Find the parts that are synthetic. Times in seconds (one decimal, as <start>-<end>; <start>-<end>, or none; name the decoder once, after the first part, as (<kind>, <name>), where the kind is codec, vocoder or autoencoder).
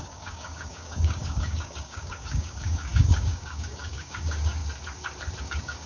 0.0-4.6 (codec, DAC); 5.4-5.9